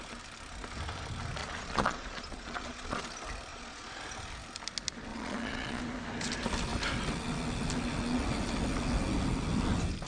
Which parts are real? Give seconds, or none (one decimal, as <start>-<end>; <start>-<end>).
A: 0.0-1.4; 3.0-3.5; 4.0-5.1; 5.8-10.1